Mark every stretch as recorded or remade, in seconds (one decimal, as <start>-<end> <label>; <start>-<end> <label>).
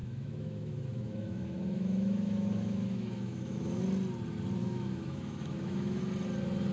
0.0-3.8 remade; 3.8-4.6 recorded; 4.6-6.0 remade; 6.0-6.7 recorded